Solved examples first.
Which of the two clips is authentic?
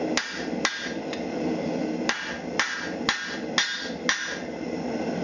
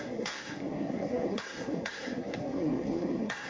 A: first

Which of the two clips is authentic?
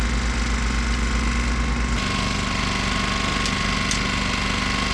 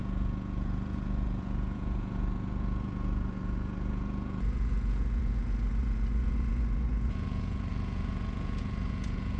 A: first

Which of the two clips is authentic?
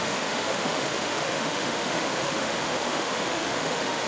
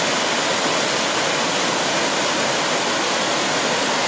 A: second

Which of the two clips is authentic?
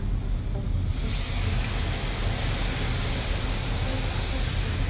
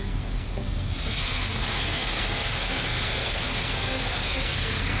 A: first